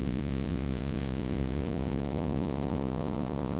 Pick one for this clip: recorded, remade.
remade